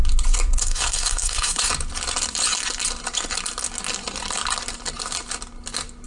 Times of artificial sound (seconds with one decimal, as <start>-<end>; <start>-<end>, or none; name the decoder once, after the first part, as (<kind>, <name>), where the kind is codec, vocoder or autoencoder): 0.6-1.7 (codec, SNAC)